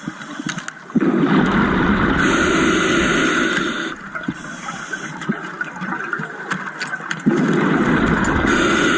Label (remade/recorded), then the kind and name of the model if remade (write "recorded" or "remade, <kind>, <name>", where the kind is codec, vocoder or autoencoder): recorded